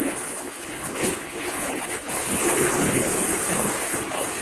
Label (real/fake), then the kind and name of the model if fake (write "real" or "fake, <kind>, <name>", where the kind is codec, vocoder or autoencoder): fake, codec, HILCodec